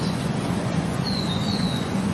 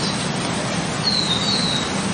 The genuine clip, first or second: second